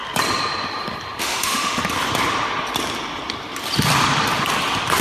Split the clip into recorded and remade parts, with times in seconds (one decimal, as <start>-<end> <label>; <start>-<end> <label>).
0.0-1.2 recorded; 1.2-1.8 remade; 1.8-5.0 recorded